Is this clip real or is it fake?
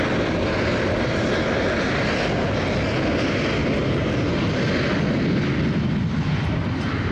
real